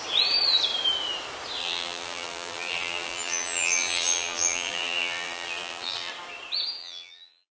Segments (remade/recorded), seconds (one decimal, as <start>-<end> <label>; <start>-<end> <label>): 0.0-1.6 recorded; 1.6-6.1 remade; 6.1-6.8 recorded; 6.8-7.5 remade